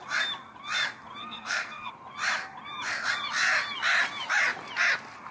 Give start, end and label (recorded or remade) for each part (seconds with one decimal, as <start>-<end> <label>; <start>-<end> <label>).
0.0-1.2 recorded; 1.2-1.9 remade; 1.9-5.3 recorded